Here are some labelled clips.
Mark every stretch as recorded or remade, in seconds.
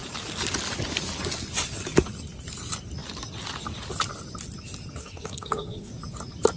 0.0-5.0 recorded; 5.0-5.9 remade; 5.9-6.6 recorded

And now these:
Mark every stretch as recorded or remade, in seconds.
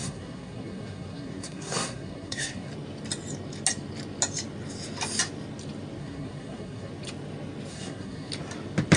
0.0-2.7 remade; 2.7-6.0 recorded; 6.0-6.9 remade; 6.9-7.7 recorded; 7.7-8.3 remade; 8.3-9.0 recorded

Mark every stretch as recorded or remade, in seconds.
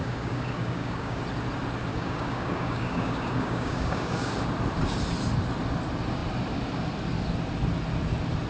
0.0-1.2 remade; 1.2-1.9 recorded; 1.9-4.3 remade; 4.3-8.5 recorded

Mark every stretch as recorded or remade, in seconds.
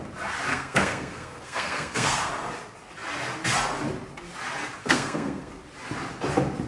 0.0-0.5 recorded; 0.5-2.3 remade; 2.3-4.8 recorded; 4.8-5.5 remade; 5.5-6.7 recorded